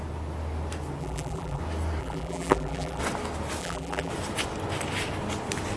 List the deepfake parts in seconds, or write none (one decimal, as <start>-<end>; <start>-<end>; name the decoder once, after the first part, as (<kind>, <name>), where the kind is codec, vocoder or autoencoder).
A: 1.0-1.6 (vocoder, BigVGAN v2); 2.0-3.0; 3.6-4.1